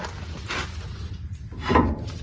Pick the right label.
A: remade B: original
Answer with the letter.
B